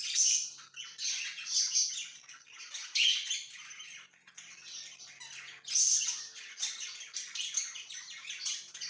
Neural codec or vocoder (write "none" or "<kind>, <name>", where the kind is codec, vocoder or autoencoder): none